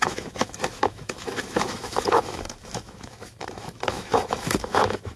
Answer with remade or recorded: remade